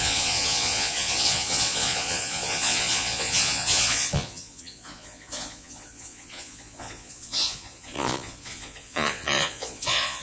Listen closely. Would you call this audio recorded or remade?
remade